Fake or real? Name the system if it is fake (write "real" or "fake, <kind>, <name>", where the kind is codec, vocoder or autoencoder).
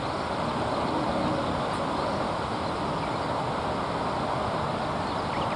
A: real